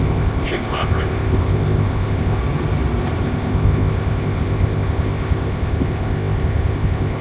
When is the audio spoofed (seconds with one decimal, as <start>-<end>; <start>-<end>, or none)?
0.0-2.4; 3.2-7.2